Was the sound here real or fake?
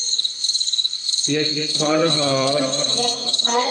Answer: fake